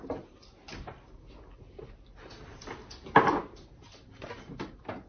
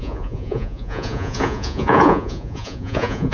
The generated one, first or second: second